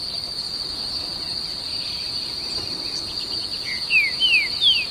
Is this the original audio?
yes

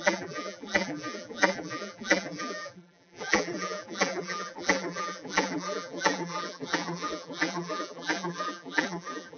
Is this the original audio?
no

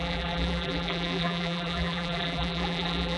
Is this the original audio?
no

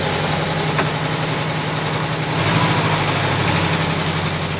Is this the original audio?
yes